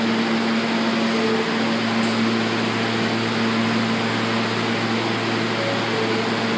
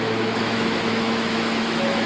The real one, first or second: first